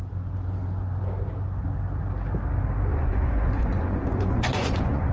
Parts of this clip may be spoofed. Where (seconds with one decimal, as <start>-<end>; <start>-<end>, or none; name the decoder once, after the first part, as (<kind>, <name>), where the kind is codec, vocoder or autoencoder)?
2.9-5.1 (vocoder, Vocos)